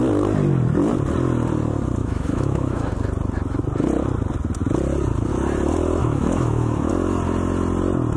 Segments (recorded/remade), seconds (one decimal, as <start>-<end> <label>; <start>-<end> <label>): 0.0-2.0 recorded; 2.0-2.9 remade; 2.9-6.0 recorded; 6.0-6.9 remade; 6.9-8.2 recorded